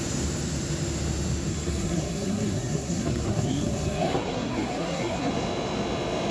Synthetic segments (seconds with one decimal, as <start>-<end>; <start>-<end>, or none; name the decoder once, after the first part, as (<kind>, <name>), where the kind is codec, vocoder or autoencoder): 1.5-5.3 (codec, SNAC)

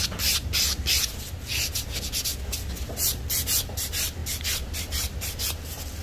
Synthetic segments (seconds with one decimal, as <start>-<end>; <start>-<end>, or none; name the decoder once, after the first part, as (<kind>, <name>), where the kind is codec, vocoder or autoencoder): none

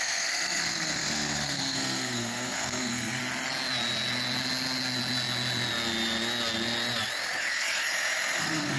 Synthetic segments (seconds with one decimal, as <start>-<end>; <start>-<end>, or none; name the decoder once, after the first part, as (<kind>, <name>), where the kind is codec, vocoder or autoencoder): 0.0-3.2 (codec, SNAC); 8.4-8.8

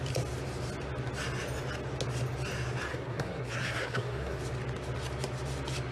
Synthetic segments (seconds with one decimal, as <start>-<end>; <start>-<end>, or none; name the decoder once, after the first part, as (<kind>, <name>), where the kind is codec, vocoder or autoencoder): 2.9-4.4 (codec, SNAC)

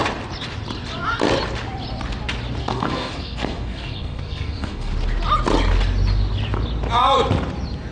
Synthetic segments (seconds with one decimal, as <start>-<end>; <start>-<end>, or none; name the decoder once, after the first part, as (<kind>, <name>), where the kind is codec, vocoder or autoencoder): 2.6-4.9 (codec, SNAC)